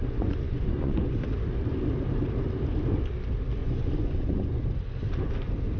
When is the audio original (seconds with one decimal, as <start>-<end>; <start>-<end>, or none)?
1.1-3.6; 4.6-5.8